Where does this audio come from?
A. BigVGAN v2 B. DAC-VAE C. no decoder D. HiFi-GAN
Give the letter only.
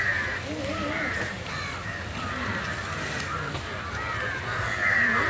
C